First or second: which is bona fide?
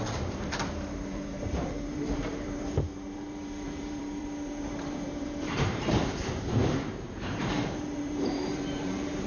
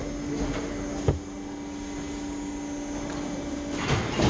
second